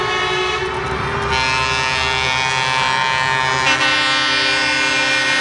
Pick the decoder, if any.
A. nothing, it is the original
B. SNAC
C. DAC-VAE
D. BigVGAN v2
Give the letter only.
A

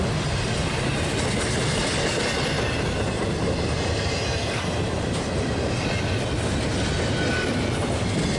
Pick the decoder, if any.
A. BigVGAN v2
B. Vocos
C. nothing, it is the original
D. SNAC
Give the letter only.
C